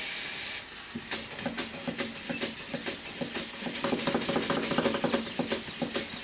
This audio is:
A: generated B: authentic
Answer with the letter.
B